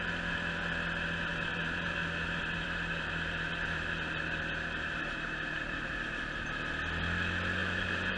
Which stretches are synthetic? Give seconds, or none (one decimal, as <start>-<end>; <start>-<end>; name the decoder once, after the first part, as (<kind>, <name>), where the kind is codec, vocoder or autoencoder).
1.3-6.2 (vocoder, BigVGAN v2); 7.6-8.2